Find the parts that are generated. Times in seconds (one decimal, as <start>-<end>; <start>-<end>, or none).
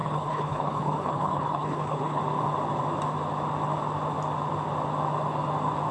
0.0-2.2